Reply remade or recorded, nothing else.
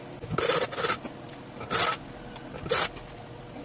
recorded